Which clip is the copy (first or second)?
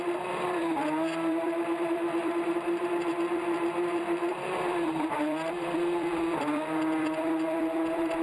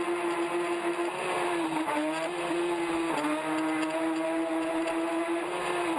first